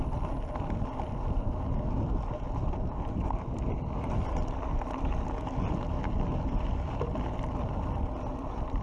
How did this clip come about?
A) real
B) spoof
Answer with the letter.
A